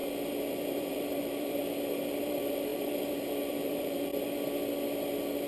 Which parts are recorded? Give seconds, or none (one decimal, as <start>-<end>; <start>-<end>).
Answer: 0.0-0.5; 1.6-2.2; 4.1-5.5